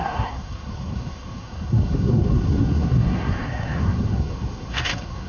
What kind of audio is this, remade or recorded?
remade